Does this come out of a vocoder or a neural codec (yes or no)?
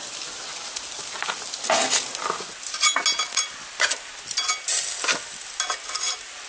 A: no